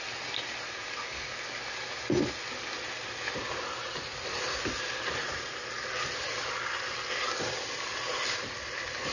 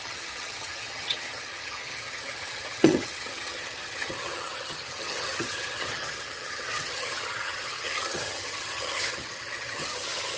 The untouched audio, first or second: first